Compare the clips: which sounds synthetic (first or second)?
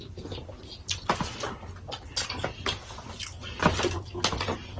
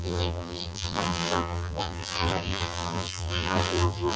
second